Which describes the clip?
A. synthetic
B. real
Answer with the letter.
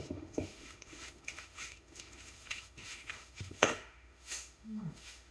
A